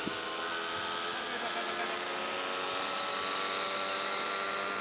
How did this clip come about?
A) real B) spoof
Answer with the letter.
A